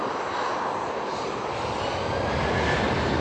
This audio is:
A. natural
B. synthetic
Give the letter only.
A